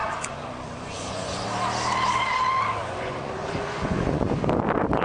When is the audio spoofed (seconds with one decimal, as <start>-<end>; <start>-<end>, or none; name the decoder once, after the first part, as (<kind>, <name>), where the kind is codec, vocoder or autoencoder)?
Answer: 0.0-1.5 (vocoder, Vocos); 2.8-4.3

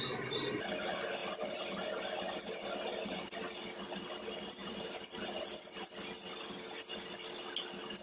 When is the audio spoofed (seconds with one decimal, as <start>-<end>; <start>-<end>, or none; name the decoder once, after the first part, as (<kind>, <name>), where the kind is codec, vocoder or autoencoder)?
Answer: 4.6-5.9 (vocoder, BigVGAN v2)

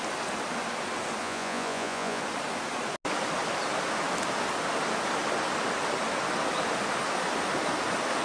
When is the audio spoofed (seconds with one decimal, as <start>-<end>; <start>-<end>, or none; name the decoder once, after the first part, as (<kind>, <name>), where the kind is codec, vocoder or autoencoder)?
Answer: 1.2-2.2 (vocoder, Vocos)

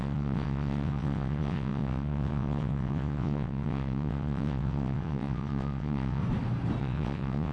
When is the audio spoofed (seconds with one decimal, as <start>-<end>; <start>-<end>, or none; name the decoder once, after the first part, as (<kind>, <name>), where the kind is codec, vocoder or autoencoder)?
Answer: 0.0-6.2 (vocoder, WaveNeXt); 6.8-7.5

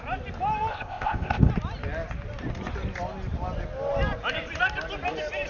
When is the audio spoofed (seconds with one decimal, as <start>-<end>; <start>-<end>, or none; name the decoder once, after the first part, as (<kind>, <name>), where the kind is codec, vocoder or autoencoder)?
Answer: 0.7-1.5 (codec, ZipCodec)

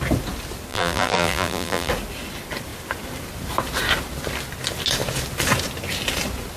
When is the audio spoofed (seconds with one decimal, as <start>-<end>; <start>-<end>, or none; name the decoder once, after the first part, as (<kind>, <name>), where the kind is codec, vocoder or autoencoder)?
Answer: 0.7-1.9 (vocoder, BigVGAN v2)

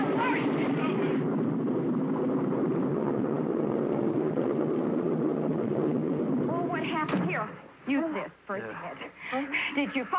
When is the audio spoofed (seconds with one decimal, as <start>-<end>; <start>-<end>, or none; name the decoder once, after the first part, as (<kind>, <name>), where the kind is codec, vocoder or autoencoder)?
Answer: 2.9-6.2 (vocoder, Vocos)